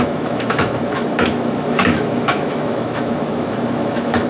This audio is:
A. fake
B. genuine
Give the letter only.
A